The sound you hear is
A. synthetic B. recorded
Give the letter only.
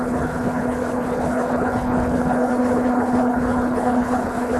A